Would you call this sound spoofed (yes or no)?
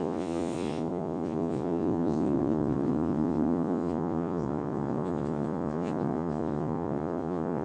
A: yes